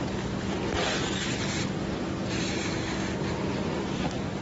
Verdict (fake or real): real